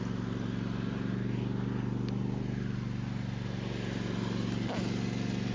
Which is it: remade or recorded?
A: recorded